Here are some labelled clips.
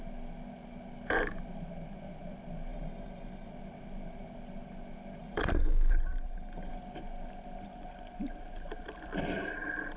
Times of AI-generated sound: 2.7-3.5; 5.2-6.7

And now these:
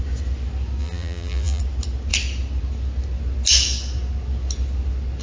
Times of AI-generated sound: 0.8-1.6

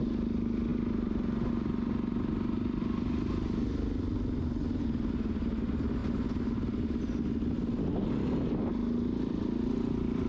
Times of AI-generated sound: 0.7-1.5; 6.0-7.0